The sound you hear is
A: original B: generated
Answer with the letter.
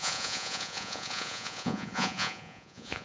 B